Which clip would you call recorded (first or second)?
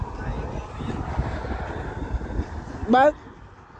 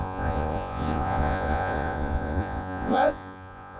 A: first